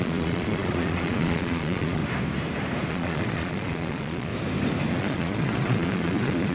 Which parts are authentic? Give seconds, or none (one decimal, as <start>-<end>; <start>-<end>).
2.0-2.9; 4.3-4.9